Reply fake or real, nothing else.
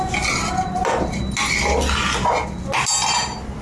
real